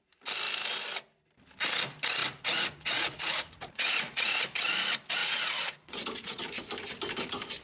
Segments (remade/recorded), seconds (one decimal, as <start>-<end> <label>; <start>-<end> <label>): 0.0-2.2 recorded; 2.2-4.4 remade; 4.4-5.2 recorded; 5.2-6.4 remade; 6.4-7.6 recorded